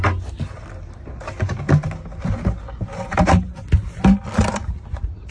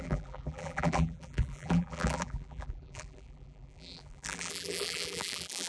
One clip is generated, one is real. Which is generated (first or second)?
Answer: second